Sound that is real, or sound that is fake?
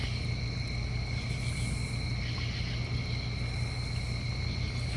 real